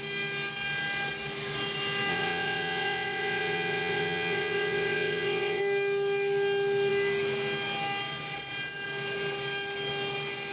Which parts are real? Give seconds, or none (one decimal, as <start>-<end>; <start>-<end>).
0.0-2.1; 5.6-10.5